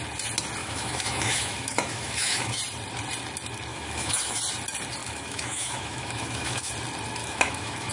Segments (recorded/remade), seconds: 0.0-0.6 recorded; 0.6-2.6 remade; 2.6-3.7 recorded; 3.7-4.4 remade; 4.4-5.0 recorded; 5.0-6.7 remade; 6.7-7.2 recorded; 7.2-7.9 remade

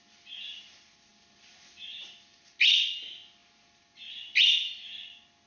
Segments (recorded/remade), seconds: 0.0-5.5 recorded

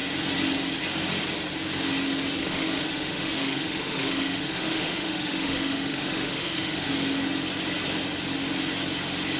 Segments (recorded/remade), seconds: 0.0-2.4 recorded; 2.4-6.9 remade; 6.9-9.4 recorded

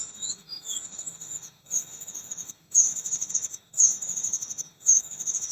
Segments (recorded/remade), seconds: 0.0-5.5 remade

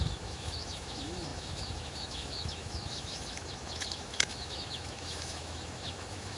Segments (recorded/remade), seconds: 0.0-6.4 remade

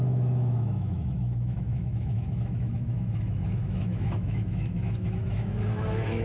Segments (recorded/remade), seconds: 0.0-6.2 remade

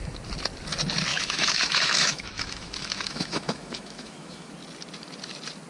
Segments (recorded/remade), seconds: 0.0-1.1 recorded; 1.1-4.5 remade; 4.5-5.7 recorded